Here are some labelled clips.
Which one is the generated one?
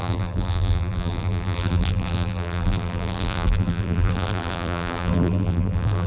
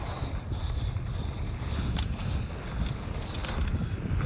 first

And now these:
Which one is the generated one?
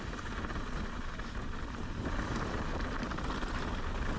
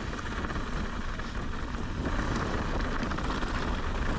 first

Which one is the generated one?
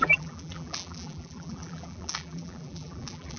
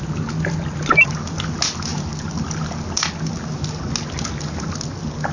first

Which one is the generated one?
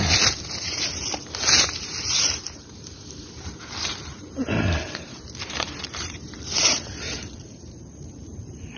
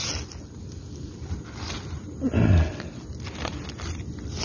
first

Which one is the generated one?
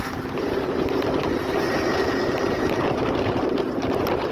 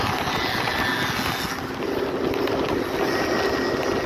first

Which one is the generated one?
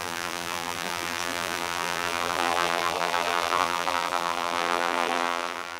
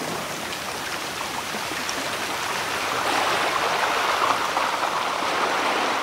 first